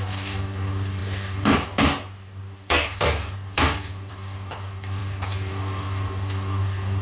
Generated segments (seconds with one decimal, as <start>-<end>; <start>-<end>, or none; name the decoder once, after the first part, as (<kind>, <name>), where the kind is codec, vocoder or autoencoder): 0.0-7.0 (codec, DAC)